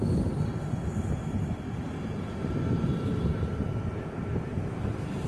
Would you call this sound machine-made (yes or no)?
no